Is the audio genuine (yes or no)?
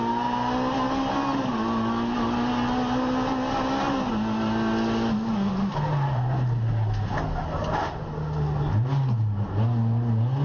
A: yes